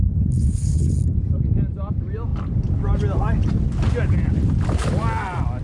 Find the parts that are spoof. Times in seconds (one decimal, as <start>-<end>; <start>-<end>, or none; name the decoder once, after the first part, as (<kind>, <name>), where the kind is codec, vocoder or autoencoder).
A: 0.0-0.9 (codec, HILCodec)